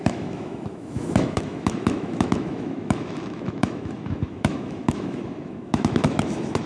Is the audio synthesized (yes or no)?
yes